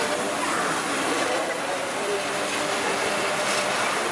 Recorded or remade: recorded